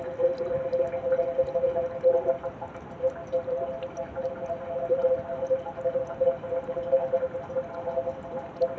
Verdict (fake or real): real